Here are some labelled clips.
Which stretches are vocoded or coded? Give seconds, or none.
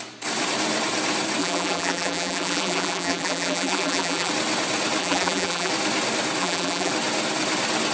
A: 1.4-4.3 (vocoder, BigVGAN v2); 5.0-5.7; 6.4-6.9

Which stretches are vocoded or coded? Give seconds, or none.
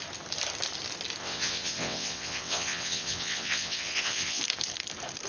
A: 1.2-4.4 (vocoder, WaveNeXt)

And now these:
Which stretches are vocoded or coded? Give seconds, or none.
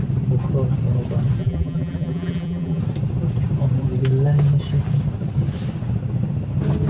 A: 1.4-2.8 (vocoder, BigVGAN v2)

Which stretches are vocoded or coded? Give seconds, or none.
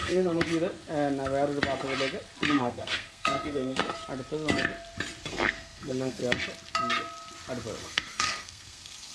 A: 0.0-0.5 (codec, SNAC); 2.5-3.8; 5.3-6.2; 7.8-9.1